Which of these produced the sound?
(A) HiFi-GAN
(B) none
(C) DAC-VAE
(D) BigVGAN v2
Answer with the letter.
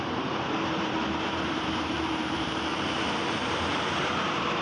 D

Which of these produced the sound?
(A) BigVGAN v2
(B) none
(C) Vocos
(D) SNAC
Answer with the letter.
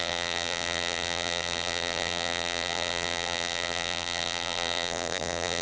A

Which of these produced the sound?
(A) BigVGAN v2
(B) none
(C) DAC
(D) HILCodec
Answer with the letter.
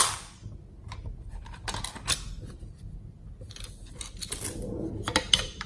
B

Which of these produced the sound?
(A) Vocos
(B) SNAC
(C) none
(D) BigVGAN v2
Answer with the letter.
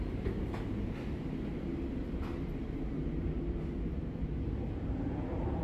D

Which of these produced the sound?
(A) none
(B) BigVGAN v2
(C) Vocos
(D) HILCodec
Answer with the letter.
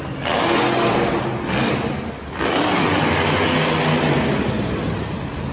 A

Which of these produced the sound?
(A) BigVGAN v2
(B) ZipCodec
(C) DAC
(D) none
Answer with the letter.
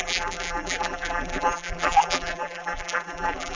A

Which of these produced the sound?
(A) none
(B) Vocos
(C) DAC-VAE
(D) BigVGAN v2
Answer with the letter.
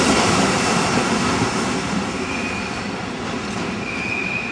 A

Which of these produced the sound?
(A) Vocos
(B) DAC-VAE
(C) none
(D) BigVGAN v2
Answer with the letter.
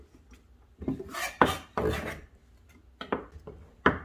C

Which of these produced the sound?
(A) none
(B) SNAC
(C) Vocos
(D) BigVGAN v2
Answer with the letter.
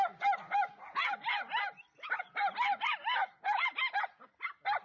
A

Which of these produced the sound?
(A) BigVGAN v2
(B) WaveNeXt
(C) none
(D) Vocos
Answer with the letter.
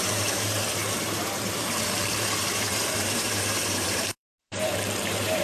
A